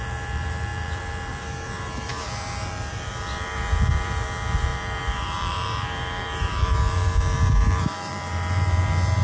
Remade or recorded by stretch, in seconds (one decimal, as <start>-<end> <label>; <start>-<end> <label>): 0.0-9.2 remade